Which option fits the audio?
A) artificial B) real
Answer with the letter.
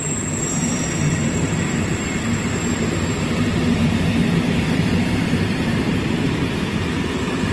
A